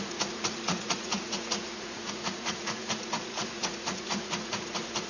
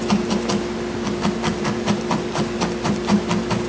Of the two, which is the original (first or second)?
second